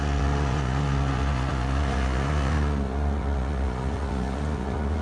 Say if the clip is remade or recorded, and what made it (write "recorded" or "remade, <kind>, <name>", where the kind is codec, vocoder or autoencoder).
remade, vocoder, Vocos